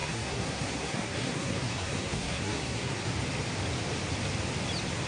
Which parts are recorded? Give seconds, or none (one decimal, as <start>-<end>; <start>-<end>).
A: 3.1-5.1